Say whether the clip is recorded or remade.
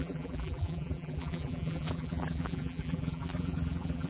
remade